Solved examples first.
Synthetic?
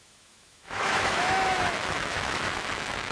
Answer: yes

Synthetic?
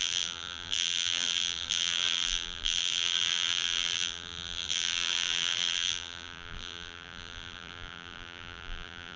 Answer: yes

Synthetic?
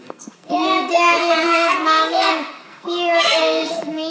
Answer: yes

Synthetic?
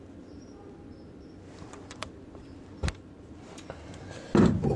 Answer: no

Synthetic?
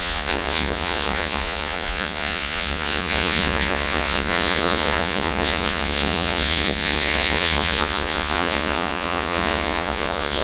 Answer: yes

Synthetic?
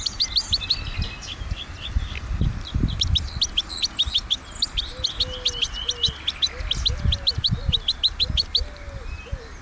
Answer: no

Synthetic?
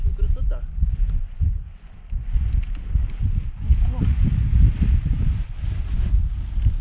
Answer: no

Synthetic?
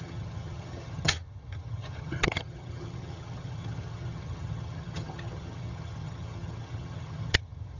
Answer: yes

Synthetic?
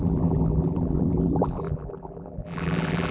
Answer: yes